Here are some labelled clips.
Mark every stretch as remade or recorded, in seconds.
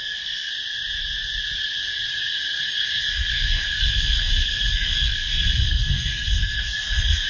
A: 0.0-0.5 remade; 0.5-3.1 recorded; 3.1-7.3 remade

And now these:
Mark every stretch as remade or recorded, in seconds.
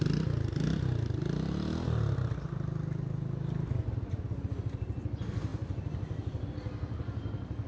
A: 0.0-7.7 recorded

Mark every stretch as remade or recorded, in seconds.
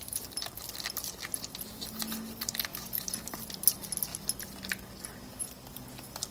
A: 0.0-2.7 recorded; 2.7-3.5 remade; 3.5-6.3 recorded